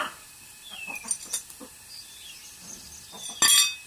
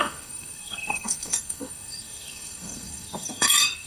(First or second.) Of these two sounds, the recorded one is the first